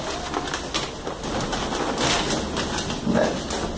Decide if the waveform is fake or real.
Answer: real